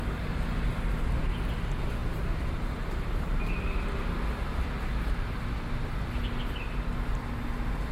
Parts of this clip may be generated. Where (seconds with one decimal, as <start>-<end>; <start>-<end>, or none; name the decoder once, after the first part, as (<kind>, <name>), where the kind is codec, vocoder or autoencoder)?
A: 2.0-3.4 (vocoder, BigVGAN v2)